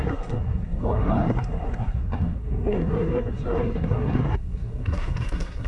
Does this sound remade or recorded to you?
remade